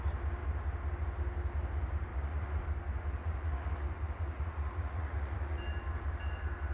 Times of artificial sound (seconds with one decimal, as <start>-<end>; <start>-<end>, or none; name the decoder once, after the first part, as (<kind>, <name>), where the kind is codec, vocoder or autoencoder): 2.1-2.6 (vocoder, Vocos); 3.2-5.6